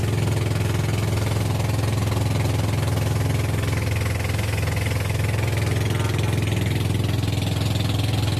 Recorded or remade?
recorded